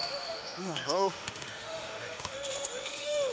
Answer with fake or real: fake